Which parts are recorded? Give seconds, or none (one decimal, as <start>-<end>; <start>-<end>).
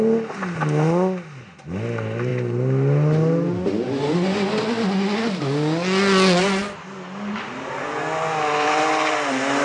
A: 0.0-9.6